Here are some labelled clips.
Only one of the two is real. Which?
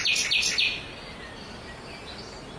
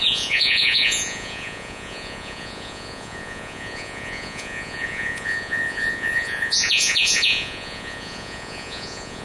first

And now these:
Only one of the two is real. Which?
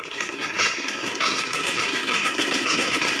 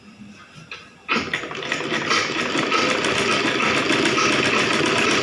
second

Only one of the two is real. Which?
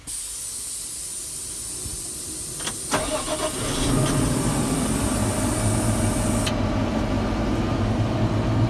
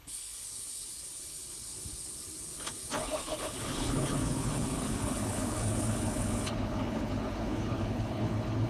first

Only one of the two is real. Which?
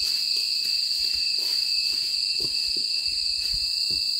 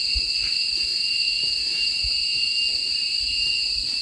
first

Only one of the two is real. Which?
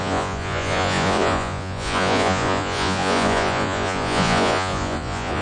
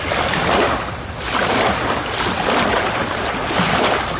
second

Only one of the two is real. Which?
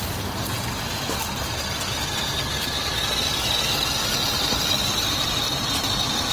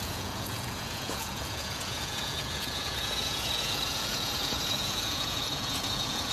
first